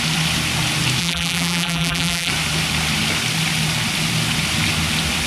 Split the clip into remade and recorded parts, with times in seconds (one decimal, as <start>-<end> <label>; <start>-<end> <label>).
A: 0.0-1.0 recorded; 1.0-2.3 remade; 2.3-5.3 recorded